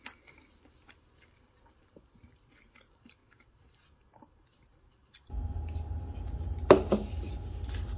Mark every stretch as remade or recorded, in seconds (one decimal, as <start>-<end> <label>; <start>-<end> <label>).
0.0-3.2 recorded; 3.2-6.3 remade; 6.3-8.0 recorded